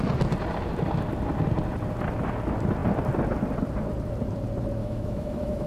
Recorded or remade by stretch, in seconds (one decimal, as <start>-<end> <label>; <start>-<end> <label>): 0.0-4.8 recorded; 4.8-5.7 remade